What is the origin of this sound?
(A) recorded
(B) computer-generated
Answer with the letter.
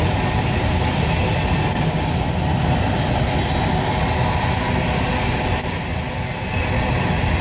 A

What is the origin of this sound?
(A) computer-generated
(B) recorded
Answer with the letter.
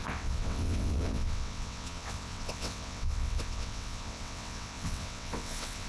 A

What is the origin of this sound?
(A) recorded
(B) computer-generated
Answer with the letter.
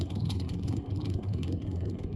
B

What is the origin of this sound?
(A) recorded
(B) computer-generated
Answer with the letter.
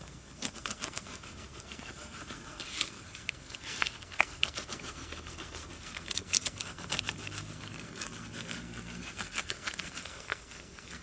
B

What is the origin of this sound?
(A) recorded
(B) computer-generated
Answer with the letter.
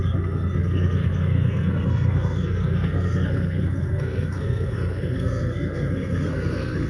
B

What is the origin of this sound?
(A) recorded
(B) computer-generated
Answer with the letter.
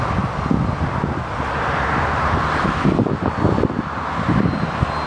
A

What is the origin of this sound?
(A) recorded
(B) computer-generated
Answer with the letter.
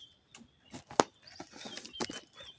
A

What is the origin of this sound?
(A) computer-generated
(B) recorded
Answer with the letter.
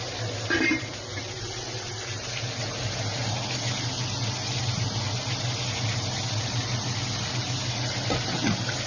B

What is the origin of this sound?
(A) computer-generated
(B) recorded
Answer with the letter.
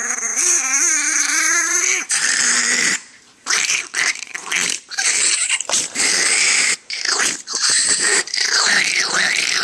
A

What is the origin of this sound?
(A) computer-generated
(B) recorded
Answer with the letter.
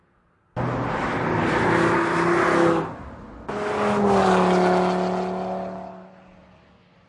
B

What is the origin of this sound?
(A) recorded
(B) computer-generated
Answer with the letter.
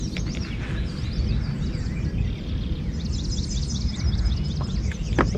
A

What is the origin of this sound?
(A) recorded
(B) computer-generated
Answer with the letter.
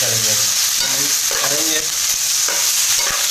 A